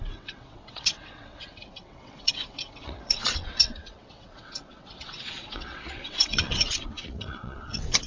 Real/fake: fake